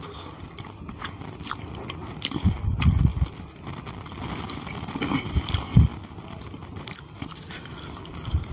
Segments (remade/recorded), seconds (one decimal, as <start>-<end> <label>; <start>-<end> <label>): 0.0-8.5 recorded